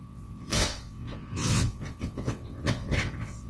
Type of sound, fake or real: fake